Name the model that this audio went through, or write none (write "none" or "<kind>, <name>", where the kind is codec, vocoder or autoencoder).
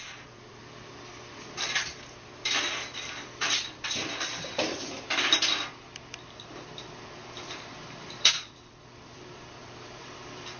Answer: vocoder, BigVGAN v2